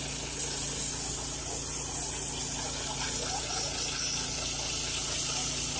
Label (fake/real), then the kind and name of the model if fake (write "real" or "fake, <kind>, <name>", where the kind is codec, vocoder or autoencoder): real